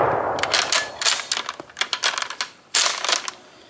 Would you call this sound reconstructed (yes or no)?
no